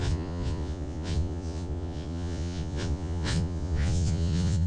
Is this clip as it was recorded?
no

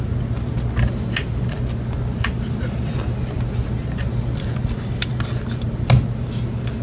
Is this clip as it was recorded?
yes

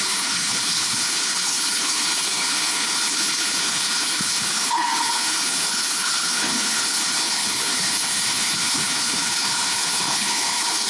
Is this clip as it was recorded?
no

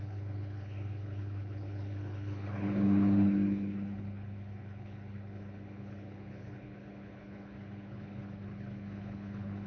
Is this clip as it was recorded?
no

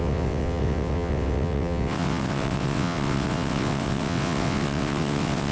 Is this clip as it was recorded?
no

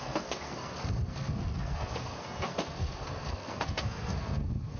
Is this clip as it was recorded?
no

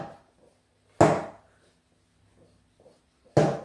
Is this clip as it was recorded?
yes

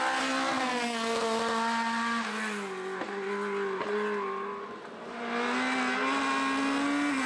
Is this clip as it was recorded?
yes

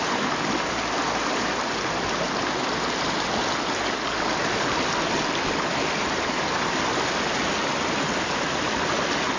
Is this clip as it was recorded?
yes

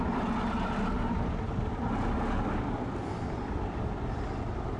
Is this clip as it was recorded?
yes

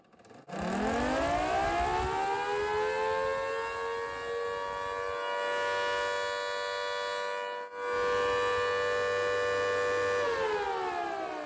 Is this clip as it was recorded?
yes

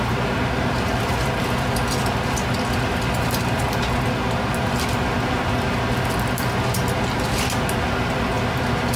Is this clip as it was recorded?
yes